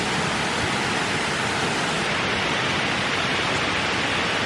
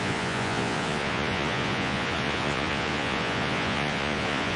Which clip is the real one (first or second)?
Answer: first